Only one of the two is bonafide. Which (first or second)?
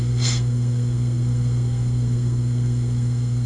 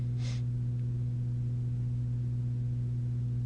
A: second